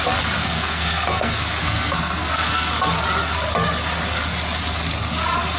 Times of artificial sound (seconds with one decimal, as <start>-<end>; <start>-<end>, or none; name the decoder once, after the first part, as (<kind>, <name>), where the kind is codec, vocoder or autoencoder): 0.4-2.7 (codec, SNAC)